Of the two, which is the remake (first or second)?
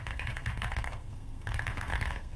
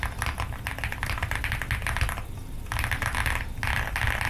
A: first